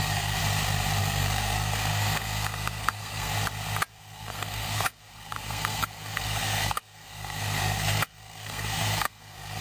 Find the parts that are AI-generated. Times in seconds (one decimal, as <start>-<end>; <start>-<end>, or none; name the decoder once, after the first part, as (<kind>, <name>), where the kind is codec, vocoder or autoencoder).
0.0-0.4 (codec, SNAC); 1.0-3.3; 3.9-9.6